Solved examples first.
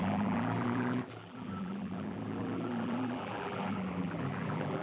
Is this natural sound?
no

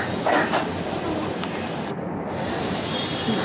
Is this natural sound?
yes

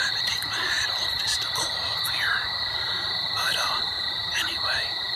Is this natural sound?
yes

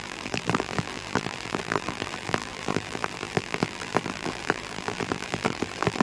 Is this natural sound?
no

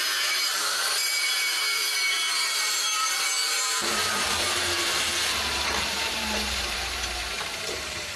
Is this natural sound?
no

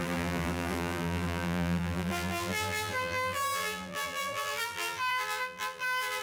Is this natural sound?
no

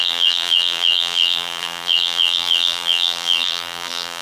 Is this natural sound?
no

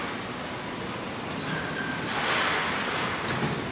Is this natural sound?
yes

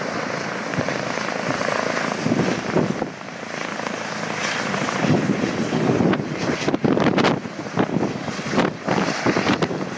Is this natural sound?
no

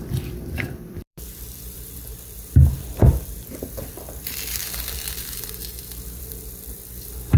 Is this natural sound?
no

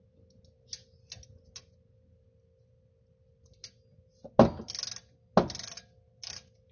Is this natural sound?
yes